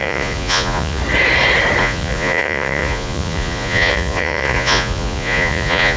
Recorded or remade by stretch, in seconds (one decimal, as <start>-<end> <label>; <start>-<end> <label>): 0.0-1.0 remade; 1.0-1.8 recorded; 1.8-6.0 remade

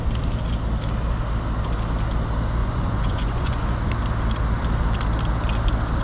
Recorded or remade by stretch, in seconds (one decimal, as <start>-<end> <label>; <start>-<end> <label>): 0.0-2.6 recorded; 2.6-3.9 remade; 3.9-6.0 recorded

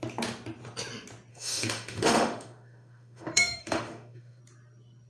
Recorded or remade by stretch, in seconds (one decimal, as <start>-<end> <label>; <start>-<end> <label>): 0.0-1.3 recorded; 1.3-4.4 remade; 4.4-5.1 recorded

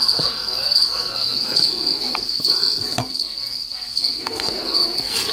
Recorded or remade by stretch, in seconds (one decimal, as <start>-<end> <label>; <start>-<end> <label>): 0.0-5.3 remade

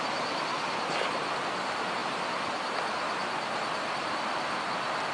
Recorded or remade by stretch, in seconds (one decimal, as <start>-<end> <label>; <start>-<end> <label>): 0.0-5.1 recorded

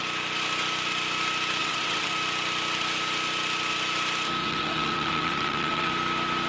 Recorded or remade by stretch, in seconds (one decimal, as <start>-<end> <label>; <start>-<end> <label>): 0.0-1.6 recorded; 1.6-2.1 remade; 2.1-4.4 recorded; 4.4-5.9 remade; 5.9-6.5 recorded

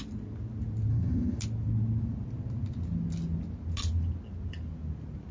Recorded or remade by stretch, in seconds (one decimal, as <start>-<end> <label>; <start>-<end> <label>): 0.0-0.9 recorded; 0.9-1.4 remade; 1.4-5.3 recorded

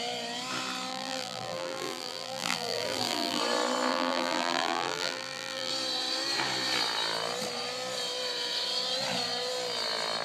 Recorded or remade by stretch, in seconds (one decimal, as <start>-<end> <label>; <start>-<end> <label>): 0.0-0.9 recorded; 0.9-3.4 remade; 3.4-3.9 recorded; 3.9-5.7 remade; 5.7-10.2 recorded